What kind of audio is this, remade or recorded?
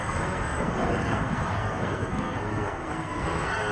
remade